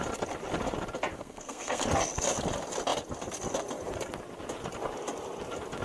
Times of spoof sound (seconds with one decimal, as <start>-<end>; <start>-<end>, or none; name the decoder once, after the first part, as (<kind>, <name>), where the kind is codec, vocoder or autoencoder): 1.1-1.8 (codec, SNAC)